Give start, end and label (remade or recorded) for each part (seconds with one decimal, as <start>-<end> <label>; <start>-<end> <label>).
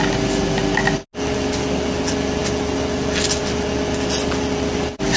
0.0-5.2 recorded